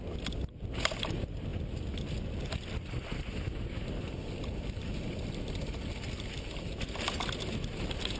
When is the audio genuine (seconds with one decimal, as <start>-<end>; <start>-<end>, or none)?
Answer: 0.0-8.2

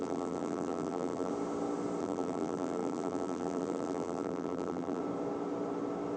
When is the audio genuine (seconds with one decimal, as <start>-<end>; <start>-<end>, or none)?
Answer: 1.3-2.0; 5.0-6.2